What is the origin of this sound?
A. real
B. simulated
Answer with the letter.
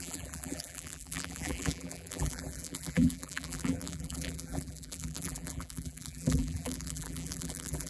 B